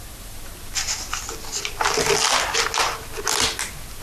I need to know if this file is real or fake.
real